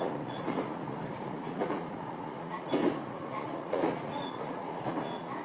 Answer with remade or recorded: remade